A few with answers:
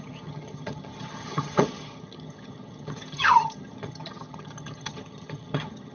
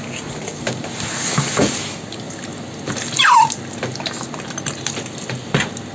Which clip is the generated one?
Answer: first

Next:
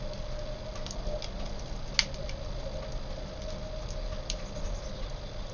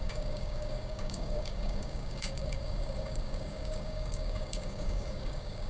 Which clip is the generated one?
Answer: second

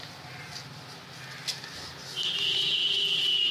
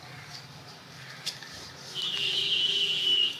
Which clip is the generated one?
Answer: second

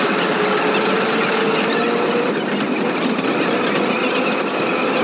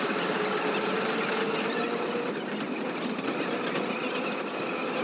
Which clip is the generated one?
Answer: second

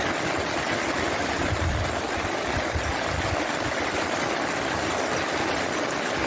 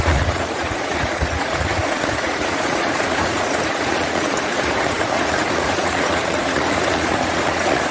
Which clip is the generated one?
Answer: second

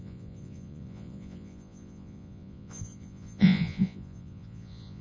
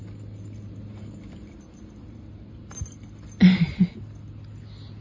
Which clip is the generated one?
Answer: first